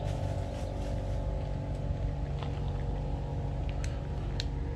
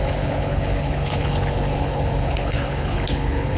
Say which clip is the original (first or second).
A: first